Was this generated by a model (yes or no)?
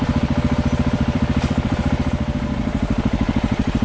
yes